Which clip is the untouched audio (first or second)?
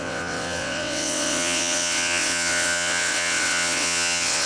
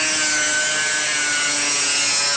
second